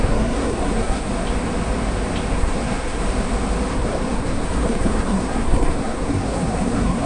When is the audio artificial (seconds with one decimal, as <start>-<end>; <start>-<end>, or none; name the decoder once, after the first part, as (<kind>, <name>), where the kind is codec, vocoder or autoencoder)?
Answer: 0.0-1.1 (codec, SNAC); 2.3-3.0; 3.7-7.1